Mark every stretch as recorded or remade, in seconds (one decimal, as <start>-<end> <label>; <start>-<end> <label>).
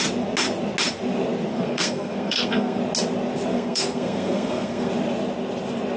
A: 0.0-1.5 recorded; 1.5-2.8 remade; 2.8-3.5 recorded; 3.5-4.9 remade; 4.9-6.0 recorded